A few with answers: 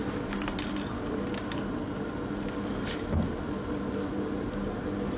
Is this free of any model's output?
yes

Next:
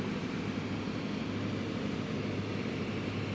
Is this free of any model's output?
yes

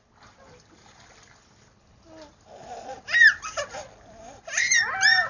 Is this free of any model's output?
yes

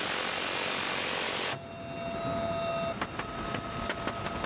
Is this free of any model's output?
yes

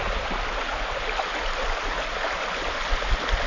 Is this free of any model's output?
yes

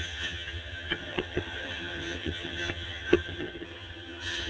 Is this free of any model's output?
no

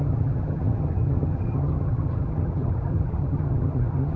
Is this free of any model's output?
no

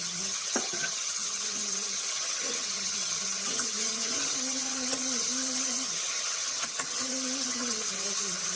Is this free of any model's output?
no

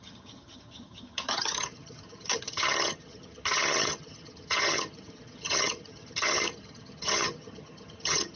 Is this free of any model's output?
no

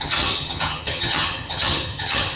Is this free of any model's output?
no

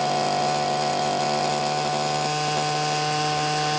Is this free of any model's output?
yes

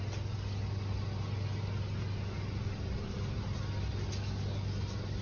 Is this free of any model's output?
yes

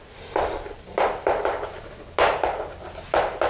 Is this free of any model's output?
yes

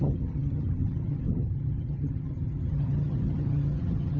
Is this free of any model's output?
no